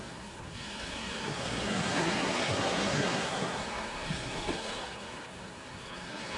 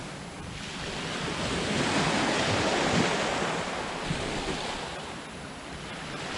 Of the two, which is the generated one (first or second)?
first